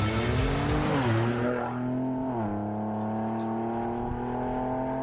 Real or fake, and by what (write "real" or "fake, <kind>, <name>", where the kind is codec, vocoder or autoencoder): real